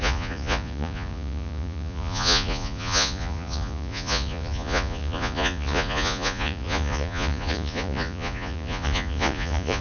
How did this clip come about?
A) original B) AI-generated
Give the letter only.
B